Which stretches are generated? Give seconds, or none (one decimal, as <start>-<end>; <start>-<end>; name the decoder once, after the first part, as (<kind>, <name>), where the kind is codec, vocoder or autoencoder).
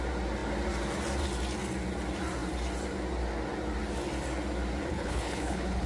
4.9-5.9 (codec, HILCodec)